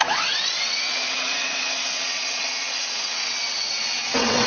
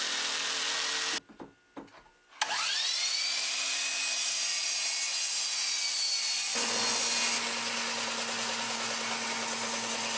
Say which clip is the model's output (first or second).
first